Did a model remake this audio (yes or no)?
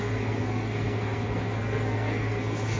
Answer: yes